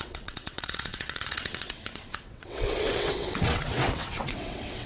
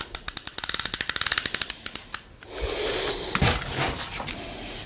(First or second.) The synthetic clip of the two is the first